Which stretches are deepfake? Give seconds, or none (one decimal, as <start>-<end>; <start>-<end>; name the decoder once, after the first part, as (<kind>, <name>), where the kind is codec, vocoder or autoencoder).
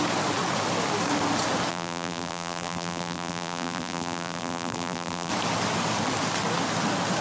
1.7-5.3 (vocoder, BigVGAN v2)